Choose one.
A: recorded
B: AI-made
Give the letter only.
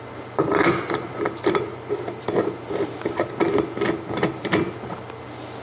A